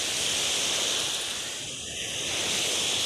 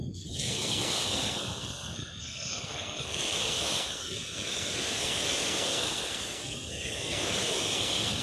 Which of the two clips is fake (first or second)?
second